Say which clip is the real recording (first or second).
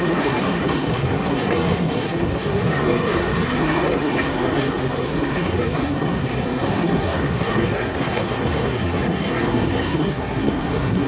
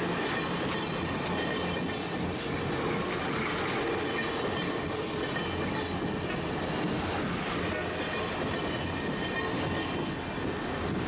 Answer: second